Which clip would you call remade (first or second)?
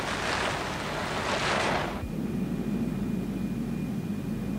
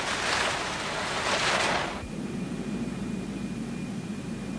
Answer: second